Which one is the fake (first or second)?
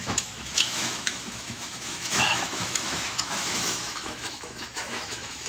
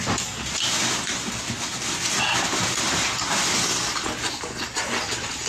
first